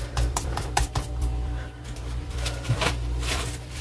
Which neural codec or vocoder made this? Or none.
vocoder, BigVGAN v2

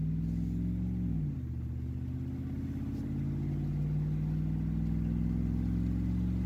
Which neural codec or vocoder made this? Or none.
none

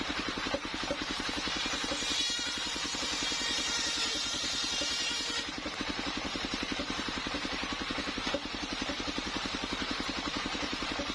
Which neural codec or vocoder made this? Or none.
vocoder, BigVGAN v2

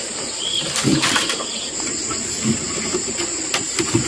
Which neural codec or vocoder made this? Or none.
none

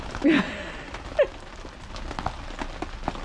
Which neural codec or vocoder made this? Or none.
none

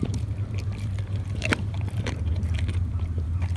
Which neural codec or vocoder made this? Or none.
vocoder, BigVGAN v2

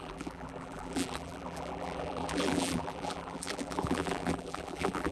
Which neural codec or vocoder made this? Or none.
vocoder, BigVGAN v2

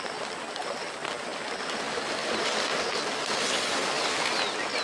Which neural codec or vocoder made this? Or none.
none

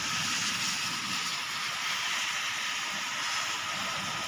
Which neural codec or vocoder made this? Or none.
none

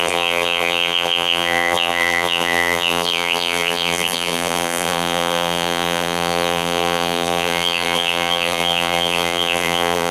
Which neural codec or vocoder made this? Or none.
vocoder, BigVGAN v2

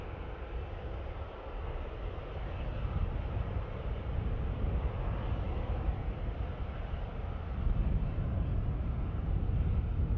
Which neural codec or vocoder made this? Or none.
none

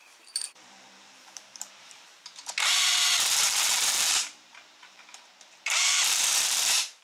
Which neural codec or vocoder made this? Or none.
vocoder, BigVGAN v2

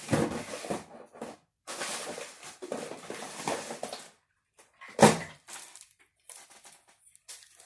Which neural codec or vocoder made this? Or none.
vocoder, BigVGAN v2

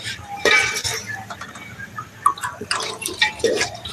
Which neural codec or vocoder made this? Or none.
vocoder, BigVGAN v2